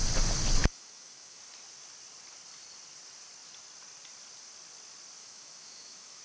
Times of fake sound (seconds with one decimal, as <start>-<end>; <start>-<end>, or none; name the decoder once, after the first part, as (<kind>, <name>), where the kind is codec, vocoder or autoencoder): 0.6-1.4 (autoencoder, DAC-VAE); 5.2-6.2